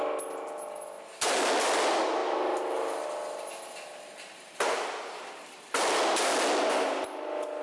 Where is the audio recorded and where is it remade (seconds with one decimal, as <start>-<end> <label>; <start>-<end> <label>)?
0.0-7.6 recorded